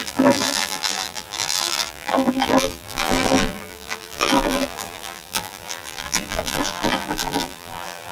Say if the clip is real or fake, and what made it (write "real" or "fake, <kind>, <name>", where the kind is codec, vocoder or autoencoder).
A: fake, vocoder, BigVGAN v2